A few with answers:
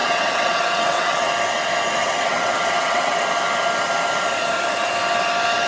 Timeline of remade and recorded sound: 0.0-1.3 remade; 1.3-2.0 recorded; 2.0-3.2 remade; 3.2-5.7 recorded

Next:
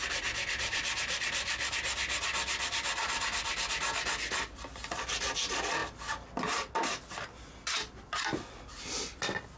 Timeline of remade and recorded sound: 0.0-9.6 recorded

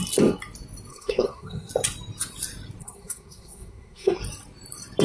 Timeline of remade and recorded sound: 0.0-0.9 recorded; 0.9-1.7 remade; 1.7-2.8 recorded; 2.8-4.2 remade; 4.2-5.0 recorded